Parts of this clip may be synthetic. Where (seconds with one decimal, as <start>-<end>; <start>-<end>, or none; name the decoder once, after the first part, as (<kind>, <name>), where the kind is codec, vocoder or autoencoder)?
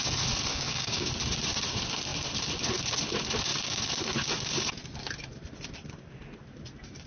0.5-1.1 (codec, DAC)